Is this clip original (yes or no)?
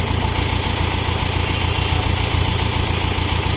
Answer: yes